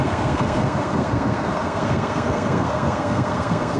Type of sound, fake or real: fake